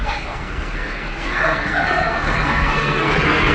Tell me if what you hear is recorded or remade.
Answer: remade